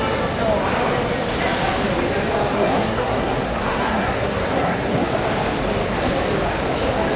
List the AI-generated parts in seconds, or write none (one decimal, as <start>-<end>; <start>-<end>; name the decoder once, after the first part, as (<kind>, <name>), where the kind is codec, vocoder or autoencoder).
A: 2.5-5.1 (codec, SNAC)